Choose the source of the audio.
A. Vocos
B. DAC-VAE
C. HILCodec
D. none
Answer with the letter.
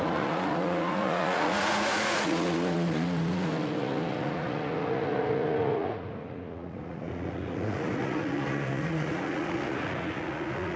A